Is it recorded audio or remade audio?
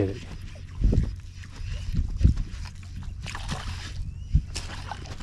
recorded